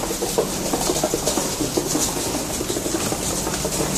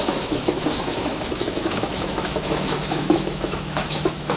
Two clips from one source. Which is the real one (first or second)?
first